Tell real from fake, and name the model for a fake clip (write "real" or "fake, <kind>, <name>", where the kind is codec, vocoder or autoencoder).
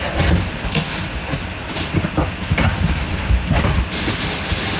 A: real